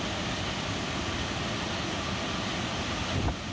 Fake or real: real